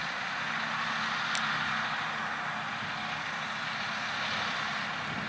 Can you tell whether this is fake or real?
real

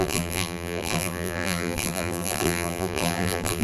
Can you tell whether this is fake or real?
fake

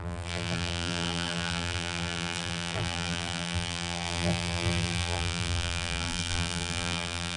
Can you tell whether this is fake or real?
fake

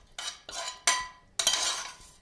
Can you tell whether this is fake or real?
real